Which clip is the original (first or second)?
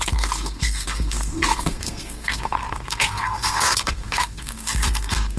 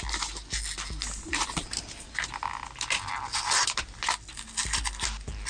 second